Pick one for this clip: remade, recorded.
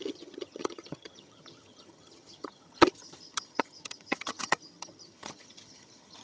remade